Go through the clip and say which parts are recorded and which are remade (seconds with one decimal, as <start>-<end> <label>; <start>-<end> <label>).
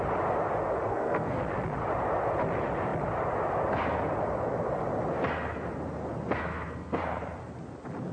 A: 0.0-0.9 recorded; 0.9-1.4 remade; 1.4-6.5 recorded; 6.5-7.0 remade; 7.0-8.1 recorded